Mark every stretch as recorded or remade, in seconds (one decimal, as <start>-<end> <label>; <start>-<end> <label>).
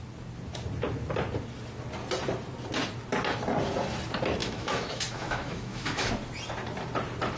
0.0-4.4 recorded; 4.4-6.1 remade; 6.1-7.4 recorded